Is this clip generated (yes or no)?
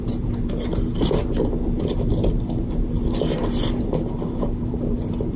no